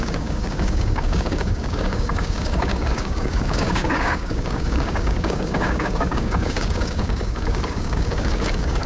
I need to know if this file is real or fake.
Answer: fake